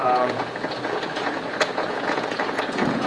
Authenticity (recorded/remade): remade